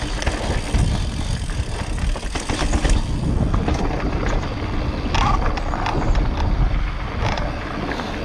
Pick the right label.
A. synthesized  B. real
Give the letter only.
B